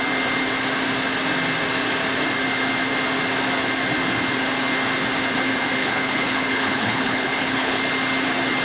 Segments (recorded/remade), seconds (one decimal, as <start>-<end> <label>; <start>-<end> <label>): 0.0-5.8 recorded; 5.8-7.8 remade; 7.8-8.6 recorded